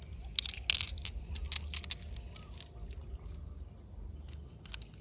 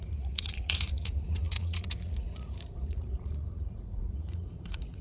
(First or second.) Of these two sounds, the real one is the first